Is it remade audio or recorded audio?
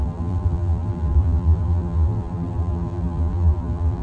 remade